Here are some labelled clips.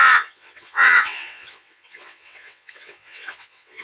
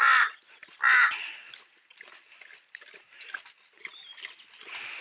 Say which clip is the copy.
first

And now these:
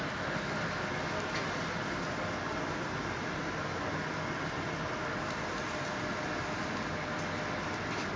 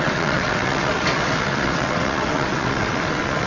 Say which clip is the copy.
second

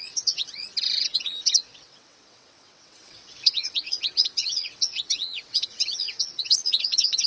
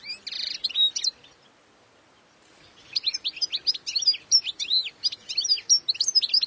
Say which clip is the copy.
first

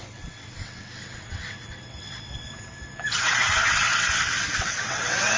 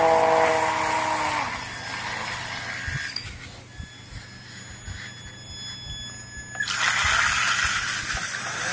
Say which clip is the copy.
first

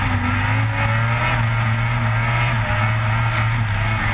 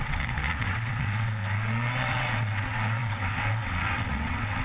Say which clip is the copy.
second